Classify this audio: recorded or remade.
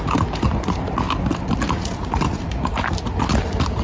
recorded